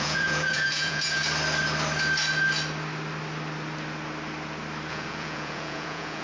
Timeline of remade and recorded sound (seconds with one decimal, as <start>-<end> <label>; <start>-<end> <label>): 0.0-1.2 remade; 1.2-4.9 recorded; 4.9-6.2 remade